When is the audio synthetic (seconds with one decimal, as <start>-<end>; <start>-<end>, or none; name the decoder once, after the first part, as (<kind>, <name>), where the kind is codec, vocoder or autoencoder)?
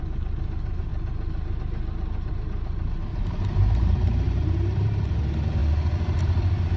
3.1-4.9 (vocoder, BigVGAN v2)